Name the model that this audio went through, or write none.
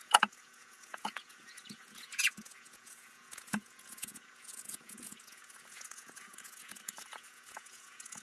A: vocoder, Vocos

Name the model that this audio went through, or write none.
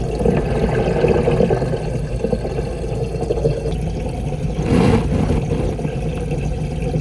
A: none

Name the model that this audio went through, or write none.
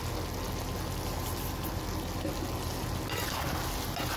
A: none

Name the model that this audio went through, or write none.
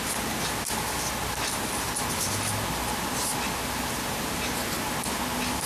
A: none